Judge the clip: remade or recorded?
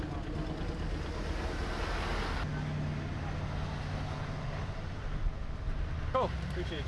recorded